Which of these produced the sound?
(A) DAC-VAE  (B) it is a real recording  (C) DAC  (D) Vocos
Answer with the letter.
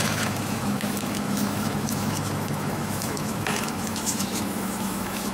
A